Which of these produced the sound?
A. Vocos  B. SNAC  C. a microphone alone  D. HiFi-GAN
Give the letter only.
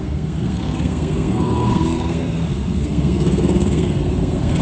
B